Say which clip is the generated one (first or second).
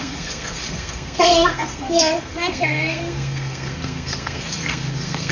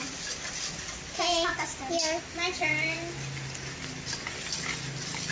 first